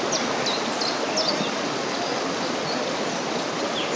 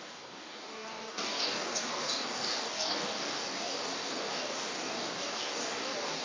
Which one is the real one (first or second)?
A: first